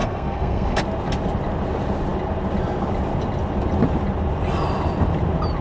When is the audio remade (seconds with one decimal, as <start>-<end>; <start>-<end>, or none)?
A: 0.0-0.8